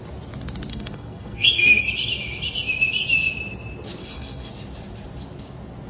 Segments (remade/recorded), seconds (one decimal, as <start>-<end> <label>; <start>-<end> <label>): 0.0-0.7 recorded; 0.7-1.8 remade; 1.8-4.0 recorded; 4.0-4.5 remade; 4.5-5.9 recorded